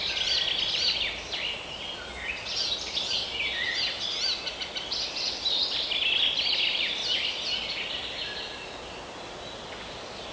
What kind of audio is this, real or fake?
real